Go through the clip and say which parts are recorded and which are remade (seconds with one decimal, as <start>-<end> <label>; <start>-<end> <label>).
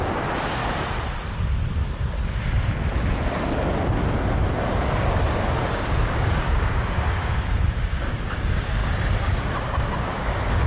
0.0-0.6 remade; 0.6-5.7 recorded; 5.7-8.8 remade; 8.8-9.4 recorded; 9.4-10.7 remade